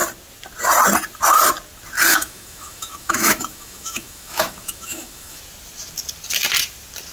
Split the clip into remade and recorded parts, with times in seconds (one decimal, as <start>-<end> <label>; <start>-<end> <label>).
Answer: 0.0-2.1 recorded; 2.1-5.4 remade; 5.4-7.1 recorded